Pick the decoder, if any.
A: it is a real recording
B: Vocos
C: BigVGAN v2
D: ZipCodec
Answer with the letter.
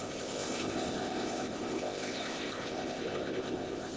D